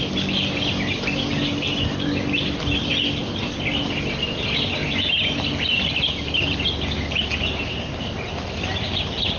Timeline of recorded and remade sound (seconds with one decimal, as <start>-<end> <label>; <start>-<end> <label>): 0.0-9.4 recorded